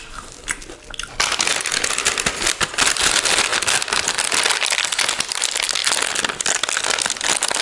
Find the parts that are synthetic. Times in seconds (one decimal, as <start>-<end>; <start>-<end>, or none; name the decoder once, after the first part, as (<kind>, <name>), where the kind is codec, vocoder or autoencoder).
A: none